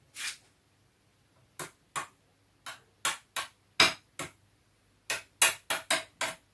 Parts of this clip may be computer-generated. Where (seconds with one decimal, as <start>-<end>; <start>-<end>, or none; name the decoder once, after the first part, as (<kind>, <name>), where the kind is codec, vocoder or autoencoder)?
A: none